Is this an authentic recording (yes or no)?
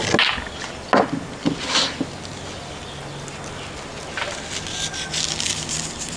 yes